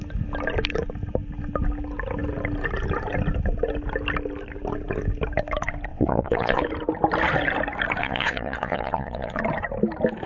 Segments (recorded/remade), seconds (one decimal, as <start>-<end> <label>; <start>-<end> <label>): 0.0-5.9 recorded; 5.9-6.6 remade; 6.6-8.0 recorded; 8.0-9.4 remade; 9.4-10.3 recorded